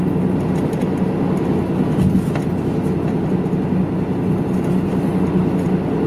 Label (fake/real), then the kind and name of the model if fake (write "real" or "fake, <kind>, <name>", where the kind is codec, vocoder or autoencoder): real